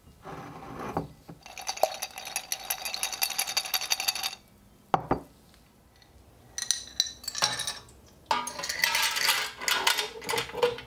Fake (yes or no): no